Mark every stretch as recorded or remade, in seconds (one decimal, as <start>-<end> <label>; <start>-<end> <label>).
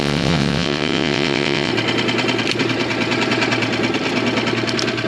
0.0-1.7 remade; 1.7-5.1 recorded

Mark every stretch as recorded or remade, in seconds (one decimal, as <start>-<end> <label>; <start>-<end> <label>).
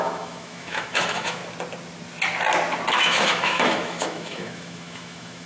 0.0-1.4 remade; 1.4-3.0 recorded; 3.0-5.5 remade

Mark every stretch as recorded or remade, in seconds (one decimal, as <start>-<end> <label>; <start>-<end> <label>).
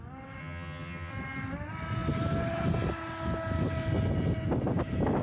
0.0-0.4 recorded; 0.4-1.1 remade; 1.1-5.2 recorded